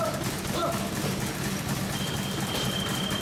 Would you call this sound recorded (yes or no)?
yes